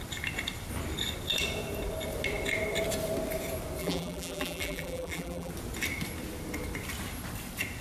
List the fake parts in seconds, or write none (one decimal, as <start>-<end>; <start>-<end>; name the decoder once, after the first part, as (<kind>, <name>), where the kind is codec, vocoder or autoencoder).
3.8-5.5 (vocoder, BigVGAN v2)